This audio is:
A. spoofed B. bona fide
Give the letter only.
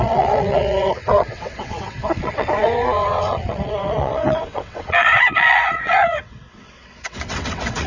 A